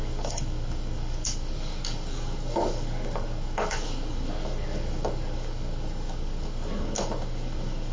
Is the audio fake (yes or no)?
yes